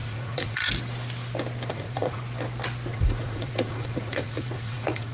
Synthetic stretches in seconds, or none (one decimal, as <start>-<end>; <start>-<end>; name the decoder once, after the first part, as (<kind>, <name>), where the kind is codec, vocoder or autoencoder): 0.0-0.7 (vocoder, Vocos); 1.7-2.2; 2.9-5.1